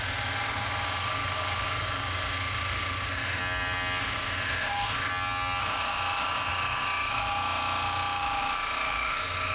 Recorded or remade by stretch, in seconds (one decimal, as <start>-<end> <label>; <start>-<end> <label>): 0.0-3.4 remade; 3.4-4.0 recorded; 4.0-5.1 remade; 5.1-5.6 recorded; 5.6-9.5 remade